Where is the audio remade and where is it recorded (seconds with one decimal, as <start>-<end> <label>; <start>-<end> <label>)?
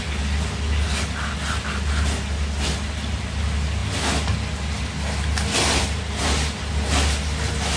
0.0-7.8 recorded